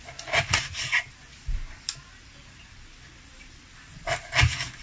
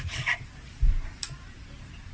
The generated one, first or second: second